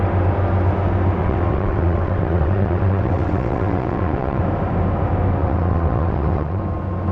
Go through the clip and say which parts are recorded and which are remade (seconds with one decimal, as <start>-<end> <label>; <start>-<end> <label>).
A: 0.0-1.2 recorded; 1.2-4.4 remade; 4.4-5.4 recorded; 5.4-6.6 remade; 6.6-7.1 recorded